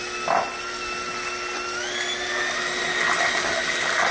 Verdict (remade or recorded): recorded